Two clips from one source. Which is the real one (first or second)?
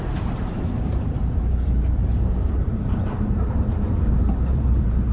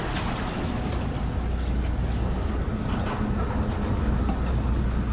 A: second